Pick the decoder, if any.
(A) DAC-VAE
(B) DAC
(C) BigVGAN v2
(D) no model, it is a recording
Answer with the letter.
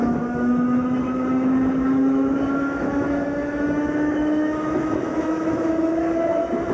A